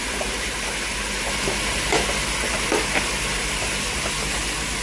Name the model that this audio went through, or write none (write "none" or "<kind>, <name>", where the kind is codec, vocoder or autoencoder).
none